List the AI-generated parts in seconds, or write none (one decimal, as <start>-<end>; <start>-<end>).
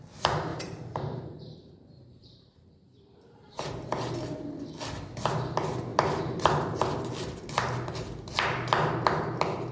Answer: 0.5-3.7; 5.9-6.7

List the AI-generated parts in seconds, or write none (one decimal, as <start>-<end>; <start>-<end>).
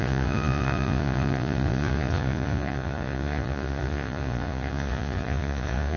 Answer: 0.0-6.0